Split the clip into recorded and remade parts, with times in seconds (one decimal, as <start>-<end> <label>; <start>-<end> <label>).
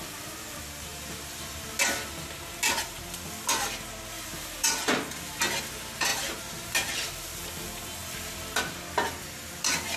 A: 0.0-0.9 recorded; 0.9-1.5 remade; 1.5-8.0 recorded; 8.0-8.6 remade; 8.6-10.0 recorded